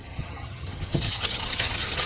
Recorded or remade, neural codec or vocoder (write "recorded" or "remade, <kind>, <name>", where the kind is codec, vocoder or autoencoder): remade, vocoder, HiFi-GAN